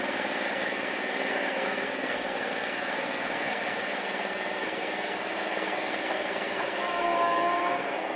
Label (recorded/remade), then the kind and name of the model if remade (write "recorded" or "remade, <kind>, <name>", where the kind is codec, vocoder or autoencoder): remade, codec, SNAC